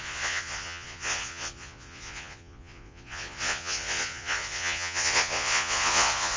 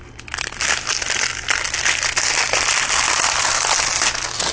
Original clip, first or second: second